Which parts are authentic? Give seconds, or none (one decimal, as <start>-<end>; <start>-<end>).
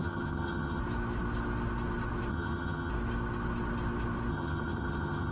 0.8-2.3; 2.9-4.3